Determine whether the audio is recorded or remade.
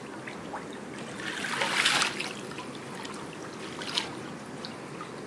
recorded